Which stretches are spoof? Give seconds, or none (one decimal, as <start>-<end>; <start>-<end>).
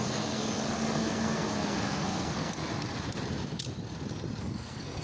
0.0-2.6; 4.4-5.0